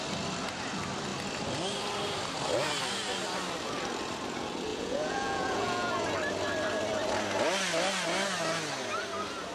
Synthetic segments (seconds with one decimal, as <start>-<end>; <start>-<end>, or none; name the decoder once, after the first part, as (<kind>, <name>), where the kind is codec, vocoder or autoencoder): 4.7-5.9 (vocoder, Vocos)

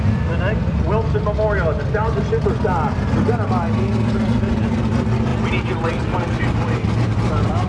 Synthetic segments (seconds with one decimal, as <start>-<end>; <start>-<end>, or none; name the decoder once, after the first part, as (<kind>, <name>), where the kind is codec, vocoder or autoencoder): none

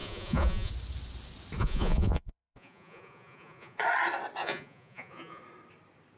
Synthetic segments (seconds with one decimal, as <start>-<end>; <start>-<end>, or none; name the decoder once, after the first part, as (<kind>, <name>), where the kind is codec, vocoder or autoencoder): 0.0-0.7 (vocoder, Vocos); 1.6-3.8; 4.4-5.4

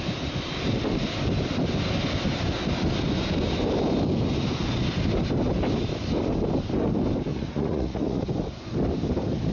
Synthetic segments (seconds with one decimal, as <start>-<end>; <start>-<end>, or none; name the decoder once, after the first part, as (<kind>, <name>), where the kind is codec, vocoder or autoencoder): 7.3-8.2 (vocoder, Vocos)

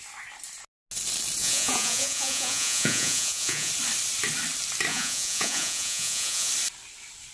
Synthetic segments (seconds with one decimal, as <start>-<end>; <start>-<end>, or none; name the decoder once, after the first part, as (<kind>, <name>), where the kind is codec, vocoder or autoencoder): 1.4-3.7 (vocoder, Vocos); 4.9-6.5

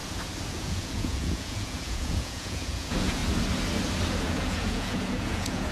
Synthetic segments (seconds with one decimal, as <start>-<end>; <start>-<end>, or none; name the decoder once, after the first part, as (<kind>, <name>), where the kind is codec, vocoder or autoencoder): 0.5-3.2 (vocoder, Vocos); 4.2-5.7

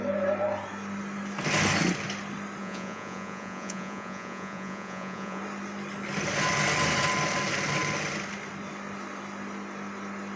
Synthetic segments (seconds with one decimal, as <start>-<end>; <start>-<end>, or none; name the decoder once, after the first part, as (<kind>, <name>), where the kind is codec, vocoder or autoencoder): 2.6-5.4 (vocoder, Vocos)